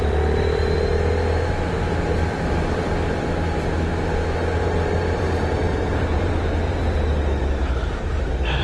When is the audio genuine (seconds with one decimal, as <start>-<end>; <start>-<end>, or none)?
0.6-1.7